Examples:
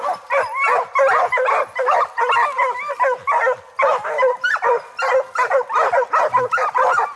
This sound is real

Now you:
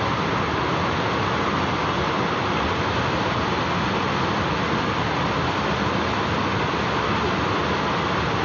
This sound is real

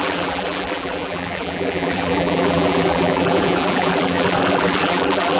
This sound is fake